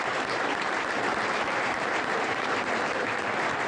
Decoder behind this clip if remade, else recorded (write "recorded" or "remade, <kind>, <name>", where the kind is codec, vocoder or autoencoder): remade, vocoder, BigVGAN v2